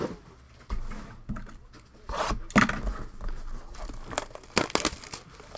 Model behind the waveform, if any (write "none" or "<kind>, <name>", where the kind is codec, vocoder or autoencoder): none